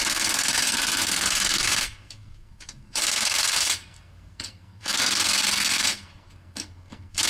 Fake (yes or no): yes